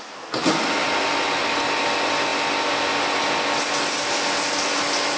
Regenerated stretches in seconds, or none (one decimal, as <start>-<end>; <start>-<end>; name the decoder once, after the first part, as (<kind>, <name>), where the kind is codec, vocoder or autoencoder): none